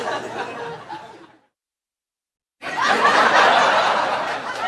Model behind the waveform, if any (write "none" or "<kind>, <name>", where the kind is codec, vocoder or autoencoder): none